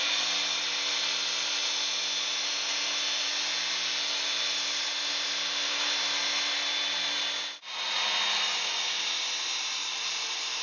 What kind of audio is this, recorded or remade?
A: recorded